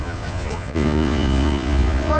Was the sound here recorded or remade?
remade